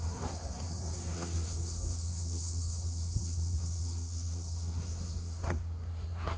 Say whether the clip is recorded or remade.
remade